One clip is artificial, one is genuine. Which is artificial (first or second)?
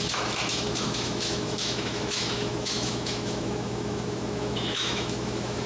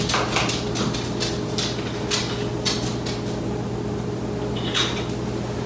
first